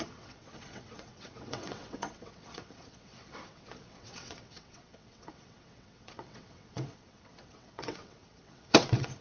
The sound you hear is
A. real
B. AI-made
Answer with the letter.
B